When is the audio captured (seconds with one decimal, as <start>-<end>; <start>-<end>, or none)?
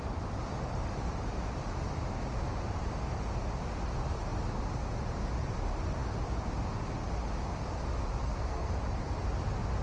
0.0-8.2; 8.8-9.8